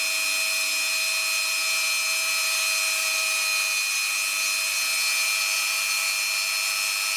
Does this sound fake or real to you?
real